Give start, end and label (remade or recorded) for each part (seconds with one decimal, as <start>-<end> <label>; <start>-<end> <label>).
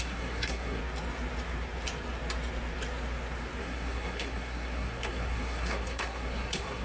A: 0.0-0.8 remade; 0.8-3.6 recorded; 3.6-6.8 remade